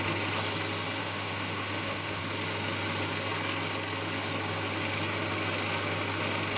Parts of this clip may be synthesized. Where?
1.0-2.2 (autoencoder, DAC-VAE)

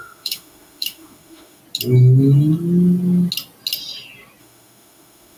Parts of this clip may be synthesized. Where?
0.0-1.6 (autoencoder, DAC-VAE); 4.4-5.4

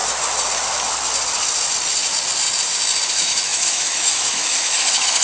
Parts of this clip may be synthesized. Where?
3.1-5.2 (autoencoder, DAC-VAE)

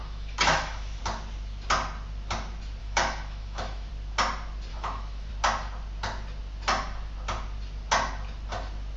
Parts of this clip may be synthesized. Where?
0.0-1.0 (autoencoder, DAC-VAE); 2.8-3.9; 4.7-5.3